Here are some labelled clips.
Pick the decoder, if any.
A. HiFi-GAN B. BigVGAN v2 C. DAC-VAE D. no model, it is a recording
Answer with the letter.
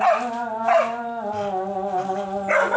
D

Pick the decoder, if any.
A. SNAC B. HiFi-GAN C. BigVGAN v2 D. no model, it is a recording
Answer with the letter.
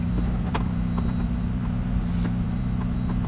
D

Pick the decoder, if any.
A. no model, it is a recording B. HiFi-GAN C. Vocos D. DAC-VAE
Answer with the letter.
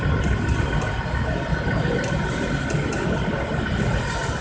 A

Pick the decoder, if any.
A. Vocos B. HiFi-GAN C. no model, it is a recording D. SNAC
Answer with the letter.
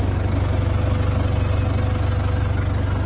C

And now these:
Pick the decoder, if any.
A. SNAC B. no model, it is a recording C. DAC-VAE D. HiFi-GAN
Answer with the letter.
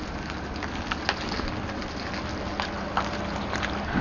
B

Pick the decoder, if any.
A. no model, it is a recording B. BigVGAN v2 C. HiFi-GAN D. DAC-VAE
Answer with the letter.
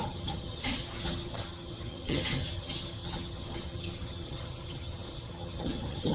C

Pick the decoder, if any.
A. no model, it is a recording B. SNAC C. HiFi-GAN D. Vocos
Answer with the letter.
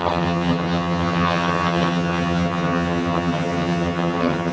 C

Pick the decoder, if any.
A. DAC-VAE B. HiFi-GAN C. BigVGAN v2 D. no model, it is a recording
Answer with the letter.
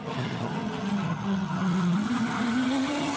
B